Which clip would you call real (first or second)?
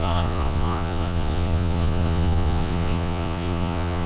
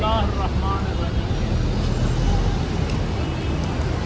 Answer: second